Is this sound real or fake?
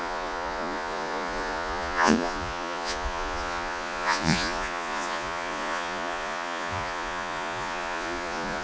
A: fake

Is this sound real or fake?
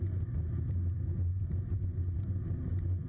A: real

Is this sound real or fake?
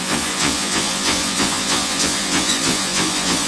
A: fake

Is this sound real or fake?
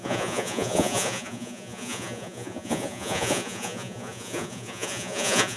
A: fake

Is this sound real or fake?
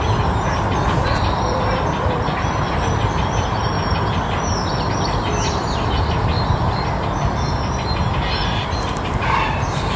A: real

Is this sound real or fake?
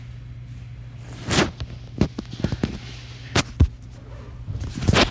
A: real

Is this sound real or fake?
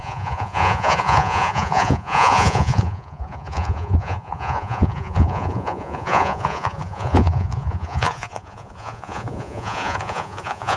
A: fake